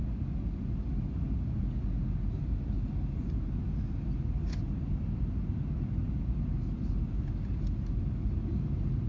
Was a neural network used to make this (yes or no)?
no